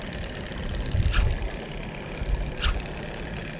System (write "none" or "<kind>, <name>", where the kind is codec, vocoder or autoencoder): none